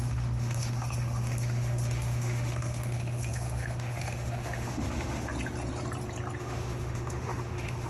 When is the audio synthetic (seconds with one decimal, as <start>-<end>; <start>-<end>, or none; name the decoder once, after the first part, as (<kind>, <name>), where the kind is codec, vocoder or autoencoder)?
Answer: 0.0-5.3 (autoencoder, DAC-VAE); 6.4-7.9